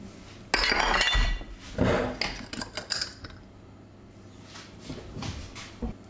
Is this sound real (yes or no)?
yes